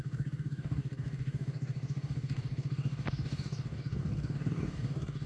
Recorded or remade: remade